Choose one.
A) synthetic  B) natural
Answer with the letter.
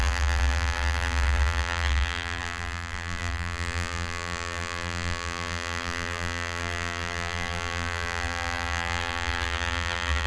A